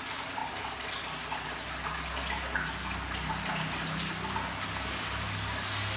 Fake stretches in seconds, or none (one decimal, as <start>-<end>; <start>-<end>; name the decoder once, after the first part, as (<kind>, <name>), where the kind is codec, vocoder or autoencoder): none